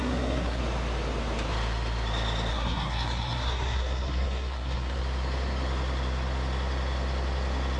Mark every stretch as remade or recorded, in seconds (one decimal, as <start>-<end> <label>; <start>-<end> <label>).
0.0-0.6 remade; 0.6-2.5 recorded; 2.5-5.0 remade; 5.0-7.8 recorded